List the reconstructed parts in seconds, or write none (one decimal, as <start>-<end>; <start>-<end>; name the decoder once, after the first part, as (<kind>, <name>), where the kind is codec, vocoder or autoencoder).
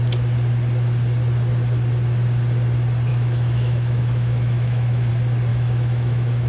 3.1-5.1 (autoencoder, DAC-VAE); 5.5-6.5